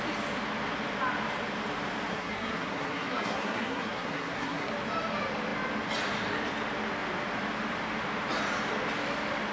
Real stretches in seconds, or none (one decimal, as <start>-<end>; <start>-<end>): 0.0-2.1; 4.7-9.5